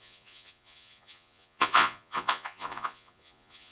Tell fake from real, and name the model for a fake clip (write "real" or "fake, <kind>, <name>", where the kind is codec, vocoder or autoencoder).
fake, vocoder, Vocos